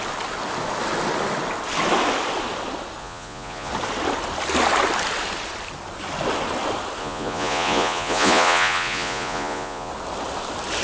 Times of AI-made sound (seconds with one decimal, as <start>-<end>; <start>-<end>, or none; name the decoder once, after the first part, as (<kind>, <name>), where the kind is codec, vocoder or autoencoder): 3.0-3.7 (vocoder, Vocos); 7.0-9.9